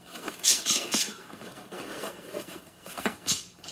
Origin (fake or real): fake